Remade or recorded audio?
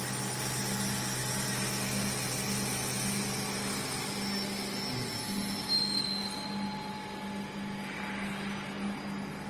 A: recorded